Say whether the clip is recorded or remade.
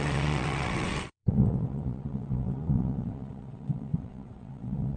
remade